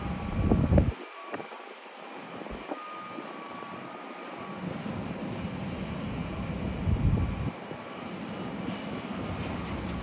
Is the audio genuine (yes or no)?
yes